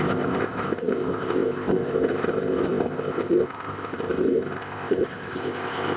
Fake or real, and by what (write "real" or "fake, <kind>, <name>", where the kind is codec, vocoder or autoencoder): fake, codec, ZipCodec